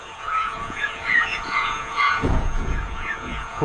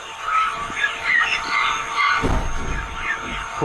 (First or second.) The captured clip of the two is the second